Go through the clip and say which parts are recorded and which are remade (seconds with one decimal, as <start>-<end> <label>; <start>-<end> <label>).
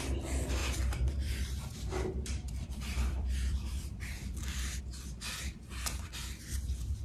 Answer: 0.0-0.6 recorded; 0.6-4.8 remade; 4.8-7.0 recorded